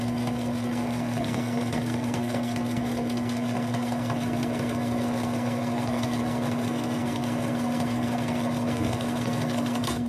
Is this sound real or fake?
fake